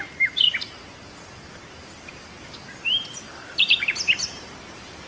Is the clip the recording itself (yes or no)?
no